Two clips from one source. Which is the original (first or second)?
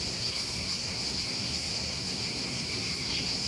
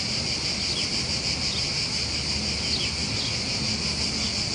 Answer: second